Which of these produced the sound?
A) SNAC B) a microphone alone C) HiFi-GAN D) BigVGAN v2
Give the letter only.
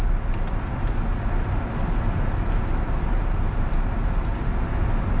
B